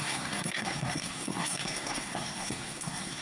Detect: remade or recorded remade